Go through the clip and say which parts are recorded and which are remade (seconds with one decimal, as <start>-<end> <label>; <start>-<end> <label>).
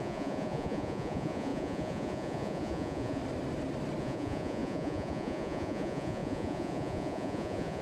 0.0-3.2 remade; 3.2-4.0 recorded; 4.0-7.8 remade